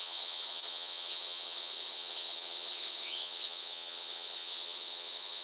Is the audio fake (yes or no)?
yes